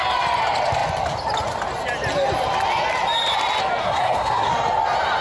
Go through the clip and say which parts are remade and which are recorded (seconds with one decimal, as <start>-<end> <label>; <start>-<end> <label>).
0.0-3.8 recorded; 3.8-4.5 remade; 4.5-5.2 recorded